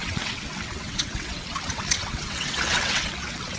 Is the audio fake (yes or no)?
yes